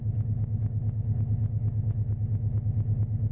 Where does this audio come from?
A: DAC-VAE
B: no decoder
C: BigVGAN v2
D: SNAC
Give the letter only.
B